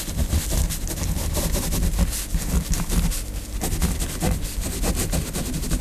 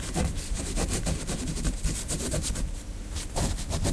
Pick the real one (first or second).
first